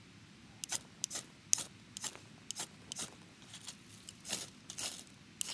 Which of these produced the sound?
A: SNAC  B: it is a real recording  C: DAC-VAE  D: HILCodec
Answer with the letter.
B